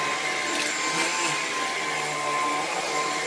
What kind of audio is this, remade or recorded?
recorded